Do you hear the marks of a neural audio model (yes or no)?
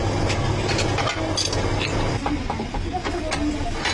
no